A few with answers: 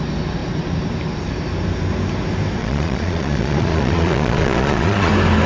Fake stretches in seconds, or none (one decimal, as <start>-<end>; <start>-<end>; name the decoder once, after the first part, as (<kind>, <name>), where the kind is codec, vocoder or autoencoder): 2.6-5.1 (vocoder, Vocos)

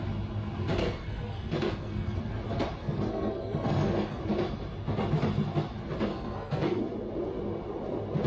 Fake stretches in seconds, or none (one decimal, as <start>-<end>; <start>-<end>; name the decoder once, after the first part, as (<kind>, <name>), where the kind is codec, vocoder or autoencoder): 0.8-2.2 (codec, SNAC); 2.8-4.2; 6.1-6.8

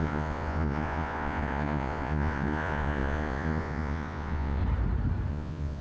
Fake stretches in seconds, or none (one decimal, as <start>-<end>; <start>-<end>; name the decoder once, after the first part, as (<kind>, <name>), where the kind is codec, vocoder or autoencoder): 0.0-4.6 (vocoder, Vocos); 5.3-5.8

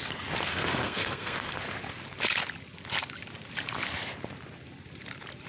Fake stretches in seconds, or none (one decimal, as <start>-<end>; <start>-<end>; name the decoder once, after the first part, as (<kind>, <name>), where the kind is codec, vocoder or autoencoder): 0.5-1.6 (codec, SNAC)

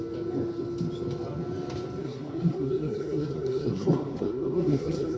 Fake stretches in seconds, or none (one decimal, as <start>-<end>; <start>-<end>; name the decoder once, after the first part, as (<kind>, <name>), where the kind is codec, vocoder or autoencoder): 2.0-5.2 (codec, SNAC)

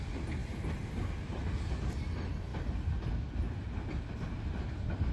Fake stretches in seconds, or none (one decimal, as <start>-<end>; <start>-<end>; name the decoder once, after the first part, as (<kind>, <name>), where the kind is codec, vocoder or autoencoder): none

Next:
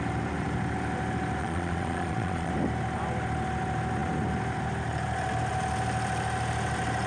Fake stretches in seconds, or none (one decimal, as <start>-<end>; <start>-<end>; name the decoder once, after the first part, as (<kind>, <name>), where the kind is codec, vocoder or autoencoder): 1.4-2.5 (vocoder, Vocos)